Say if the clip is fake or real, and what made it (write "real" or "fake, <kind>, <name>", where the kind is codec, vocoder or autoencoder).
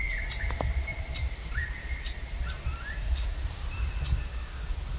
real